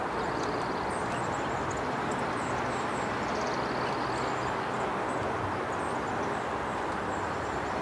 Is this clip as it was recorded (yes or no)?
yes